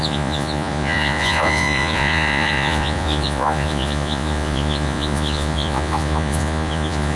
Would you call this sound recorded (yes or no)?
no